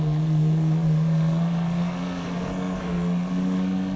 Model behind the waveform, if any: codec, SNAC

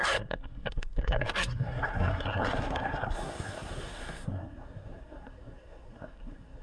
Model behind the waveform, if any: codec, SNAC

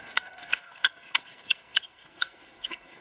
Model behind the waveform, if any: codec, SNAC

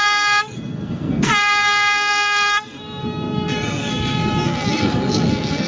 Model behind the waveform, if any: codec, SNAC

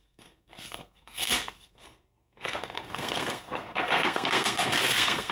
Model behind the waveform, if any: codec, SNAC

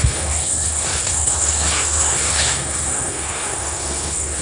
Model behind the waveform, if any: codec, SNAC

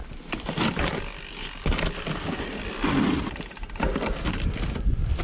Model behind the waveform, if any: none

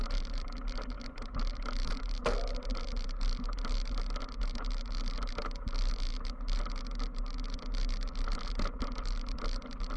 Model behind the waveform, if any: none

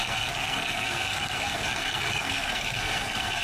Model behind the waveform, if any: codec, SNAC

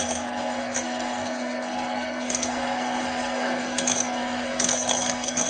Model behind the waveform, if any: codec, SNAC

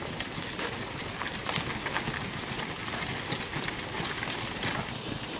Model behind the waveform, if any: none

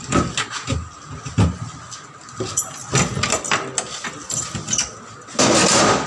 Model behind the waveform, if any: none